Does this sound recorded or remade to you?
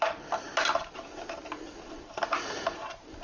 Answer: recorded